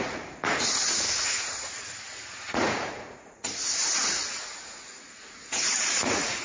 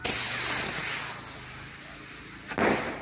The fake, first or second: first